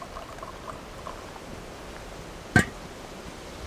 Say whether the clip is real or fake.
real